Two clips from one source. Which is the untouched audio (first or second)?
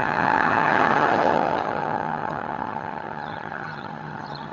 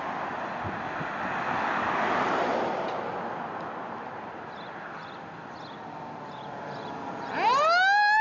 second